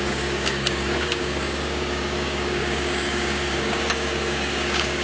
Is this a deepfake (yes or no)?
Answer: yes